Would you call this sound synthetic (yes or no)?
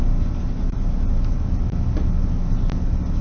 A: no